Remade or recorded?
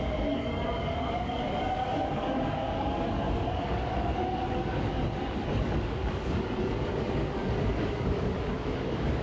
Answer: remade